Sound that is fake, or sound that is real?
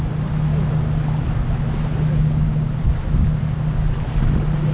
real